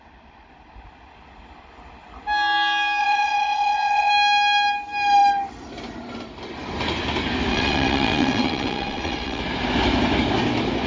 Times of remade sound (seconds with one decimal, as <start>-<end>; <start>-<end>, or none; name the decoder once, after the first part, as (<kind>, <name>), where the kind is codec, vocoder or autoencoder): 3.0-4.1 (vocoder, WaveNeXt); 7.5-9.4